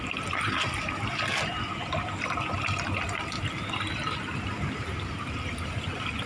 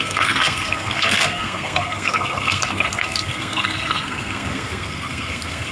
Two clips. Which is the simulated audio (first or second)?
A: second